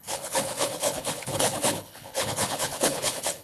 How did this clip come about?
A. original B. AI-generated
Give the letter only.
B